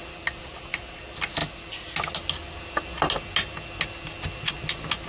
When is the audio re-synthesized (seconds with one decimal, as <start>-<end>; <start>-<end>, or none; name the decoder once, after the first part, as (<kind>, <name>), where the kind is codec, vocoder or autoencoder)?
0.4-1.0 (vocoder, BigVGAN v2)